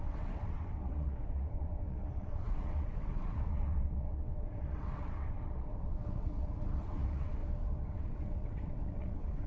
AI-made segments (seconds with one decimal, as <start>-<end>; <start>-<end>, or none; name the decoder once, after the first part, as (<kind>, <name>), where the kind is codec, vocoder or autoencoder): 0.0-7.4 (vocoder, WaveNeXt); 7.9-9.5